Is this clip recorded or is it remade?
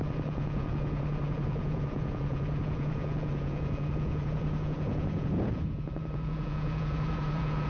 remade